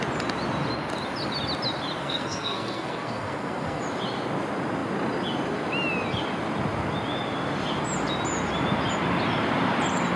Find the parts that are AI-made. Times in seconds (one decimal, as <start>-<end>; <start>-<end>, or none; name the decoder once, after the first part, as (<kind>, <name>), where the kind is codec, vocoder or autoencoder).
2.0-3.8 (codec, SNAC)